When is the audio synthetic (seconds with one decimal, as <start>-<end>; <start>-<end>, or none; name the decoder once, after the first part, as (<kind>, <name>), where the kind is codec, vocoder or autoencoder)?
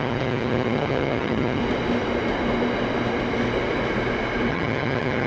0.0-1.6 (vocoder, HiFi-GAN); 4.5-5.3